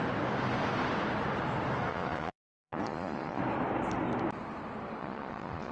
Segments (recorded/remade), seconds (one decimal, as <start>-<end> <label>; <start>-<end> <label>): 0.0-1.9 recorded; 1.9-3.4 remade; 3.4-5.0 recorded; 5.0-5.7 remade